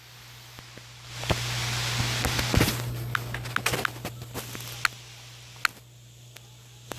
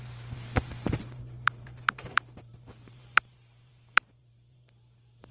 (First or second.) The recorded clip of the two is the first